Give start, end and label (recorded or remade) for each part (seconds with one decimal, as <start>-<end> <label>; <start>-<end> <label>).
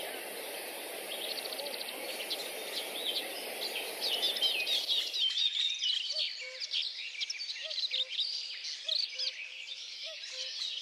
0.0-9.5 recorded; 9.5-10.2 remade; 10.2-10.8 recorded